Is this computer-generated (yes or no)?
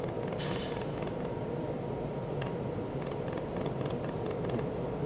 no